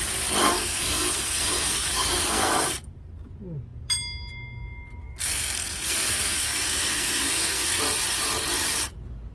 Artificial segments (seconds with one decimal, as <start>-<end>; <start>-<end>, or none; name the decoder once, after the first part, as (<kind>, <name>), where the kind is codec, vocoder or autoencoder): 0.4-2.7 (codec, SNAC); 5.0-7.8